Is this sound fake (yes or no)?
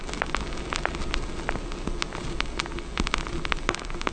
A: no